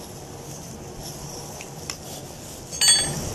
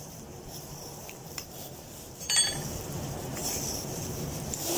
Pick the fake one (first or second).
second